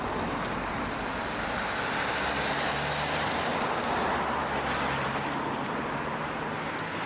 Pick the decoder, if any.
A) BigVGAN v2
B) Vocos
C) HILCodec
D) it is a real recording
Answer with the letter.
D